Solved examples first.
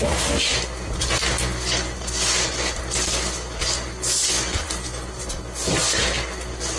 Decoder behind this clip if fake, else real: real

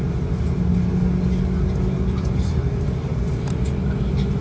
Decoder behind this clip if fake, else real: real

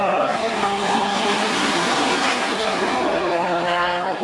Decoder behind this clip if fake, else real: fake, codec, SNAC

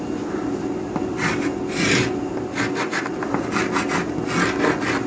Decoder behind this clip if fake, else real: real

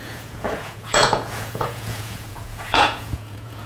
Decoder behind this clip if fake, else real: fake, vocoder, Vocos